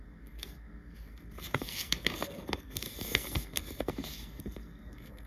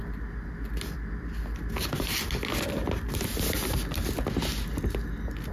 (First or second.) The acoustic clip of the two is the second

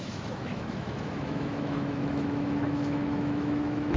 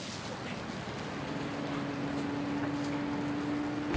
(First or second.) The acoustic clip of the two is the second